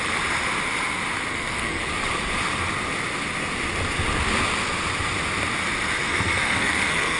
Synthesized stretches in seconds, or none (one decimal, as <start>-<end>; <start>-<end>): 1.3-1.8; 6.0-7.2